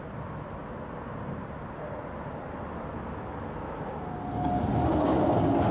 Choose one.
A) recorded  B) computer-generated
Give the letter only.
A